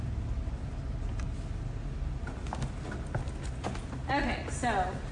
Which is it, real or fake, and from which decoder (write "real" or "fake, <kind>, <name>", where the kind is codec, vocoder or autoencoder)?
real